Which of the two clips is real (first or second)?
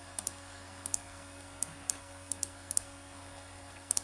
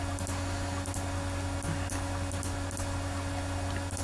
second